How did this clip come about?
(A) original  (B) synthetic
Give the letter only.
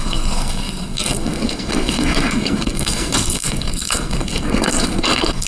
B